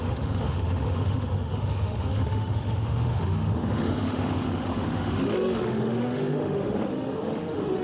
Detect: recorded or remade remade